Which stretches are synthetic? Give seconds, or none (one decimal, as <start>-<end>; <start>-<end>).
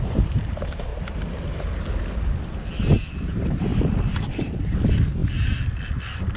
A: 0.0-0.9; 3.3-5.2; 6.0-6.4